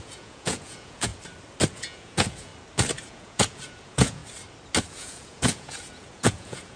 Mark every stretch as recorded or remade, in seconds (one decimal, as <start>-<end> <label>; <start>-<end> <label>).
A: 0.0-1.1 remade; 1.1-1.7 recorded; 1.7-2.5 remade; 2.5-3.1 recorded; 3.1-4.2 remade; 4.2-4.9 recorded; 4.9-6.8 remade